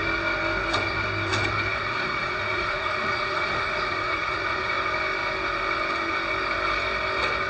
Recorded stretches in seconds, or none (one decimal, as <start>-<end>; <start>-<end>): 0.0-1.8; 4.7-7.5